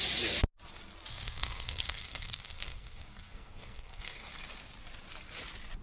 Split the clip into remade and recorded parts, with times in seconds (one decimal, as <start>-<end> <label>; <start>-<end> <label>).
0.0-1.1 recorded; 1.1-4.3 remade; 4.3-5.8 recorded